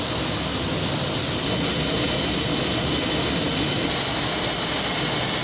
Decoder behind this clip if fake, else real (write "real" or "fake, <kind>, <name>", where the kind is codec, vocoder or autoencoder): real